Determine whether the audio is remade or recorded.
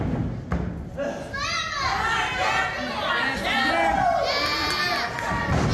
recorded